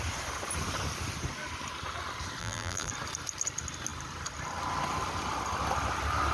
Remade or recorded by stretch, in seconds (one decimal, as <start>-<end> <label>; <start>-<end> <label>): 0.0-2.4 recorded; 2.4-2.9 remade; 2.9-6.3 recorded